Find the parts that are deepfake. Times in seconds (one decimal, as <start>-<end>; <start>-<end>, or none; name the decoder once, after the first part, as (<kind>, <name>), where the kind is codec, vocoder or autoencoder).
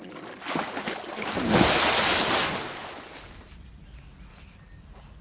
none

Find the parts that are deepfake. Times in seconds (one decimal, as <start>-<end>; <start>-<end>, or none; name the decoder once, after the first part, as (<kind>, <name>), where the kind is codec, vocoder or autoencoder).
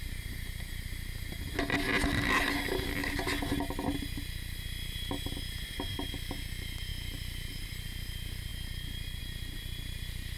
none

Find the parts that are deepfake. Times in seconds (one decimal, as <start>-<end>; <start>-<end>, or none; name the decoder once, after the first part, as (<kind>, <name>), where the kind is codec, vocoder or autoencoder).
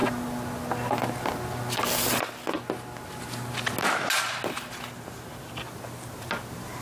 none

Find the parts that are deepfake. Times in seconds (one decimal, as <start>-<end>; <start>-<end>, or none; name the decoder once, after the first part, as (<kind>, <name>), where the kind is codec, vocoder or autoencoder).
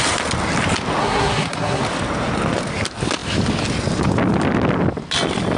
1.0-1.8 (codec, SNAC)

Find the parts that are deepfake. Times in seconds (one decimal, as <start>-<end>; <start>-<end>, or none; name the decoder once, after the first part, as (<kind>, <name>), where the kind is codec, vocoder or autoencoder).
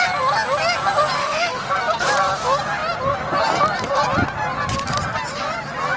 1.2-1.7 (autoencoder, DAC-VAE)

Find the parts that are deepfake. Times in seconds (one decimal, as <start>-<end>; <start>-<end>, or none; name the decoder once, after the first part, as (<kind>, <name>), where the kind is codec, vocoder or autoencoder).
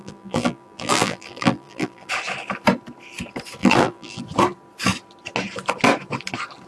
0.0-2.1 (vocoder, BigVGAN v2); 3.6-4.2